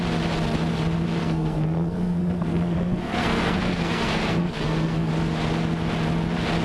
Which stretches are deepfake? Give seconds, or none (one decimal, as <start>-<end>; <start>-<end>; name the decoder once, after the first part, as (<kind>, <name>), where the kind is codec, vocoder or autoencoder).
1.1-5.1 (codec, SNAC)